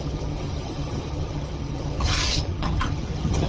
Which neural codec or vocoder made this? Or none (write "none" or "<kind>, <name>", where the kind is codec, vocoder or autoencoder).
vocoder, HiFi-GAN